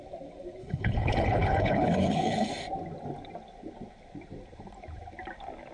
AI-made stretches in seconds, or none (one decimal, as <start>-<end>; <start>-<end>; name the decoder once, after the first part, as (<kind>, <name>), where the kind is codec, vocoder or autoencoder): 0.6-2.5 (codec, HILCodec)